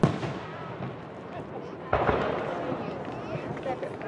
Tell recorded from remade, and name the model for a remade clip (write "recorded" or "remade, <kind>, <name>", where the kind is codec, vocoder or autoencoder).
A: recorded